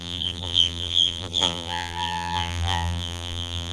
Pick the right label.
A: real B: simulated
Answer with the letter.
B